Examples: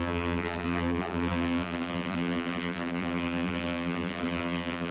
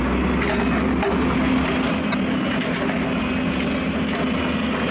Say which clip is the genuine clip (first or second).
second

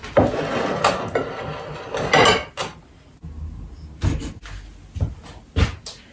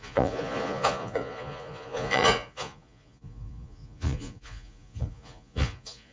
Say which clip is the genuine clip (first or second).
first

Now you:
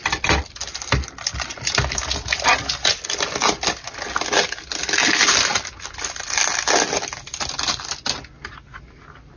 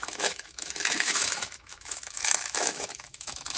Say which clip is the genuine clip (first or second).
first